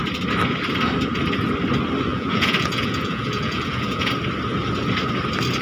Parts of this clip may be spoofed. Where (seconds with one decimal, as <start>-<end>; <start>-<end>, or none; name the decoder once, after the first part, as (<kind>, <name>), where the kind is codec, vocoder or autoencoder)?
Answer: 2.1-4.1 (vocoder, Vocos)